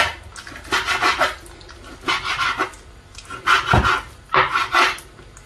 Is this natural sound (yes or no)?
yes